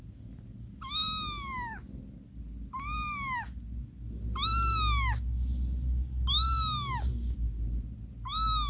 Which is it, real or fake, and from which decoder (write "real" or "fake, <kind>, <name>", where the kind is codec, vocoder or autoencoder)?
real